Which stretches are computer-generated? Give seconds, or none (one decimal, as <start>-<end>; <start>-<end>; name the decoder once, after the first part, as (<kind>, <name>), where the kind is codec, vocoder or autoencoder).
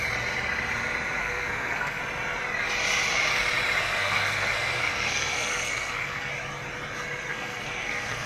1.2-2.0 (codec, SNAC); 3.8-6.3; 7.3-8.3